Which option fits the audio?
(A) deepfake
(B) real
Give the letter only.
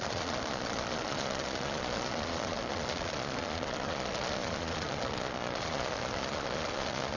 A